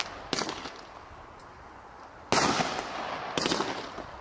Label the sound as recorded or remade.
recorded